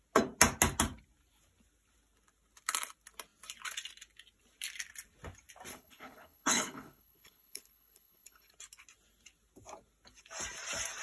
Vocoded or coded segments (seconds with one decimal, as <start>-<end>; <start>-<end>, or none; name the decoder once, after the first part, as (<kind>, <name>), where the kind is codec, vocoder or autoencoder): 5.7-8.5 (codec, HILCodec)

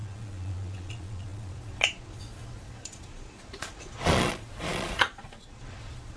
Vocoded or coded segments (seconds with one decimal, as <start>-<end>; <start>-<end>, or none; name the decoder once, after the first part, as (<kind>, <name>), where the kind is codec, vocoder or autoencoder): 0.0-6.2 (vocoder, Vocos)